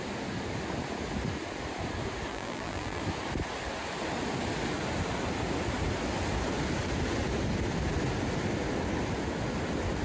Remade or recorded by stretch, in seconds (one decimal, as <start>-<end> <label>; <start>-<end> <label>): 0.0-2.3 recorded; 2.3-3.0 remade; 3.0-10.0 recorded